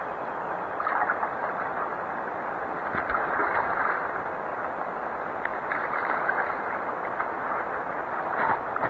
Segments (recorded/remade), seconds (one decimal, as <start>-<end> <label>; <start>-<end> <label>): 0.0-8.9 recorded